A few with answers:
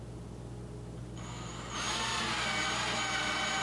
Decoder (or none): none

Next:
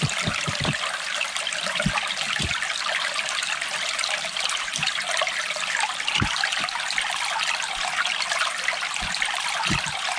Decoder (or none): none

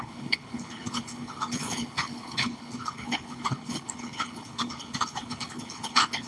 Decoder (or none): codec, HILCodec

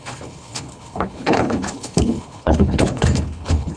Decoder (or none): codec, HILCodec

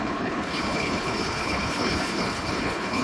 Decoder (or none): codec, HILCodec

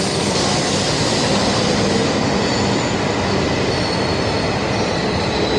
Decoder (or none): none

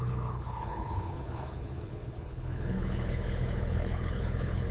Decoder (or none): codec, HILCodec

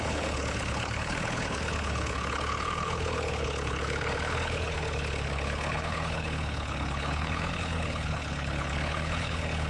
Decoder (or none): codec, HILCodec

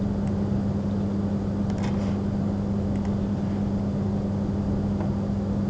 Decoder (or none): none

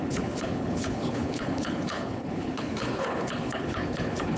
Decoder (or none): codec, HILCodec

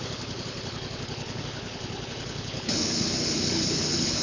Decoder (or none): codec, HILCodec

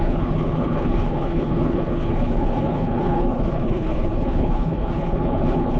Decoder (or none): codec, HILCodec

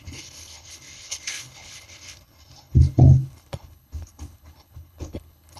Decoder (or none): codec, HILCodec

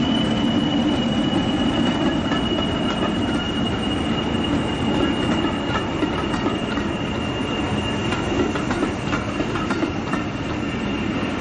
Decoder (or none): none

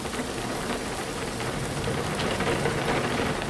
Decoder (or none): none